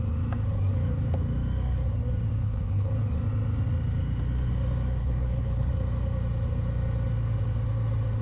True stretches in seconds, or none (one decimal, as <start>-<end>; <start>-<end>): 0.0-2.4; 2.9-5.0; 5.7-8.2